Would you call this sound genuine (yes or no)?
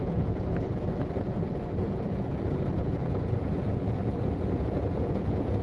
no